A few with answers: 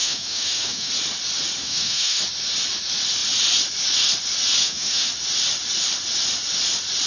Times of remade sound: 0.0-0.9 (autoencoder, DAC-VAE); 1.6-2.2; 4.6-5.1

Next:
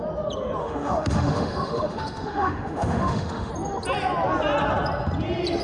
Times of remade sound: 0.6-3.5 (autoencoder, DAC-VAE)

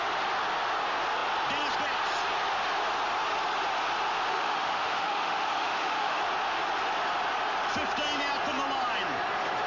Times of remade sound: 4.3-6.2 (autoencoder, DAC-VAE)

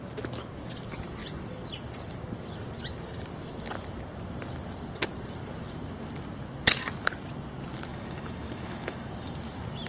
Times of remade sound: 7.9-9.1 (autoencoder, DAC-VAE)